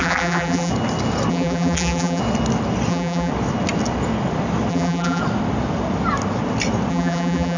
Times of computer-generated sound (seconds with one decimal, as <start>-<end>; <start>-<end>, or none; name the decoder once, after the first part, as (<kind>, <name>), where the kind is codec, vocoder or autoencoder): 0.0-0.7 (vocoder, BigVGAN v2); 1.3-2.2; 2.9-3.3; 4.7-5.2; 6.9-7.6